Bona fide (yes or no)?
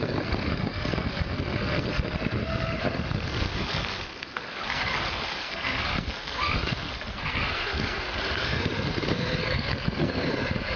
no